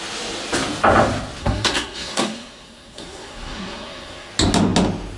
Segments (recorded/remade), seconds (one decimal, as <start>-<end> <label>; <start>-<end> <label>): 0.0-1.4 recorded; 1.4-4.3 remade; 4.3-5.2 recorded

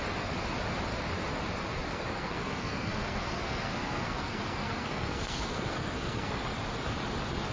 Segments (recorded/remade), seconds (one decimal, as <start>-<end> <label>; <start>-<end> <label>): 0.0-1.9 recorded; 1.9-6.4 remade; 6.4-7.5 recorded

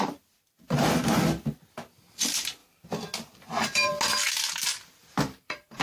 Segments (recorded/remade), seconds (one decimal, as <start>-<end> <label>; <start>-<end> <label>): 0.0-1.0 remade; 1.0-2.2 recorded; 2.2-2.6 remade; 2.6-3.3 recorded; 3.3-3.9 remade; 3.9-4.5 recorded; 4.5-5.8 remade

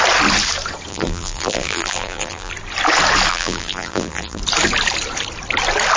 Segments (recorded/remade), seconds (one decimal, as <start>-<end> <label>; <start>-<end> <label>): 0.0-0.9 recorded; 0.9-2.5 remade; 2.5-3.3 recorded; 3.3-4.4 remade; 4.4-6.0 recorded

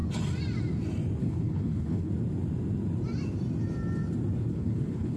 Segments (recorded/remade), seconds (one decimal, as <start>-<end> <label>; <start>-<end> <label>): 0.0-1.2 recorded; 1.2-2.1 remade; 2.1-4.5 recorded; 4.5-5.2 remade